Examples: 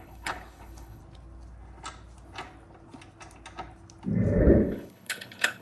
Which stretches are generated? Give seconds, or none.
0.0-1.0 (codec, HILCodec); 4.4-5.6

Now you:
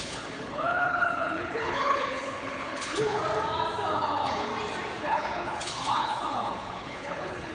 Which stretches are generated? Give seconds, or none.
0.0-3.2 (codec, HILCodec); 3.9-4.5; 5.0-7.5